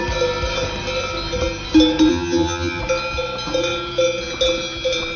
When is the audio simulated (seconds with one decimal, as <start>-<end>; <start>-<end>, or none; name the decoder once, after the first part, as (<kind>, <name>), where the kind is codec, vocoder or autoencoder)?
2.1-2.8 (vocoder, HiFi-GAN)